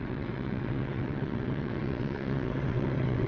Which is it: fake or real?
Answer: fake